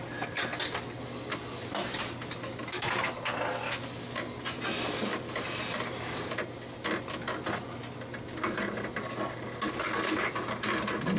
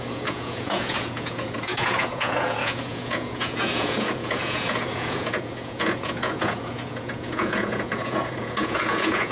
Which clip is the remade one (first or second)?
second